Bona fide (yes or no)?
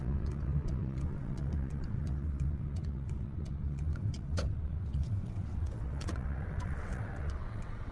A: no